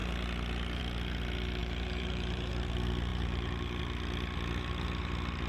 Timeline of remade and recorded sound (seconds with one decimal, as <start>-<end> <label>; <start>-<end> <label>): 0.0-1.6 recorded; 1.6-2.5 remade; 2.5-3.1 recorded; 3.1-3.8 remade; 3.8-5.5 recorded